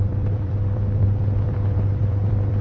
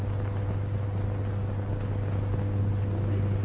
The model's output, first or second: first